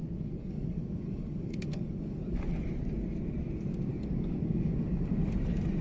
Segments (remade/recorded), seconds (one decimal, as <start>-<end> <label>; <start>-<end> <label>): 0.0-2.4 remade; 2.4-3.9 recorded; 3.9-5.2 remade; 5.2-5.8 recorded